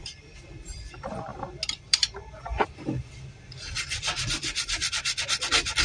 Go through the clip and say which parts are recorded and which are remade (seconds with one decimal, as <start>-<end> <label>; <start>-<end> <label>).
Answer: 0.0-1.3 remade; 1.3-1.8 recorded; 1.8-5.8 remade